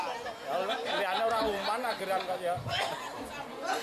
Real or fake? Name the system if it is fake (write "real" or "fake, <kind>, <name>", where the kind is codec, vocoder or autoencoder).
real